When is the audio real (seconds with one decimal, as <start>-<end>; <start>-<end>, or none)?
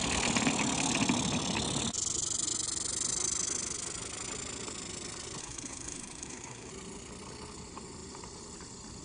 0.0-5.4; 6.7-9.0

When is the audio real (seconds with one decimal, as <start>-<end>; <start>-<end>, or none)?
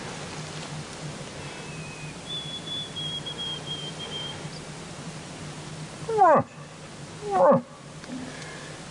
0.0-8.9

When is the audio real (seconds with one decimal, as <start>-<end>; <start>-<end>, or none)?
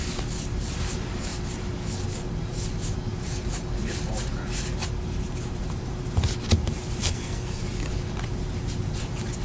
0.0-7.0; 7.6-9.4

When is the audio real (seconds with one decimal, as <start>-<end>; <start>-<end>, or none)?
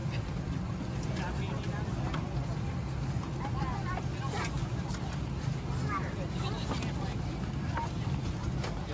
0.0-8.9